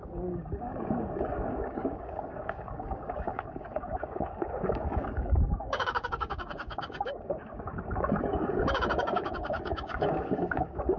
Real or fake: fake